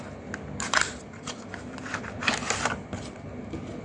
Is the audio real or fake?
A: real